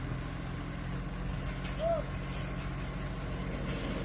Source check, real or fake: real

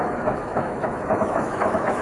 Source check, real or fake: fake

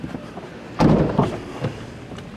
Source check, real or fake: real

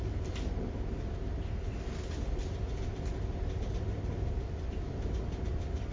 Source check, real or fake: real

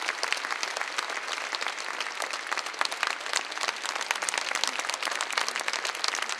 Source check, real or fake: real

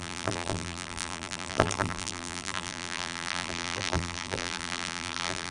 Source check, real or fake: fake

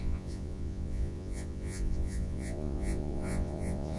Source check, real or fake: fake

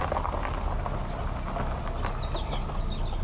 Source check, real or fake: real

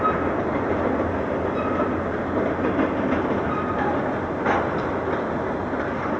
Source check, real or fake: real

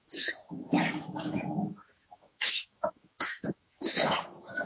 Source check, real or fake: fake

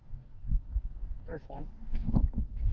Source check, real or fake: fake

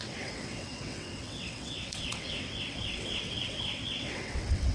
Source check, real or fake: fake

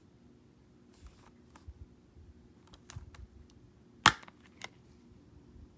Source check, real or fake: real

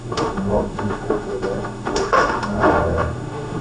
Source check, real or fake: fake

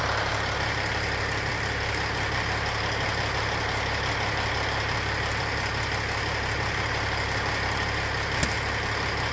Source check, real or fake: real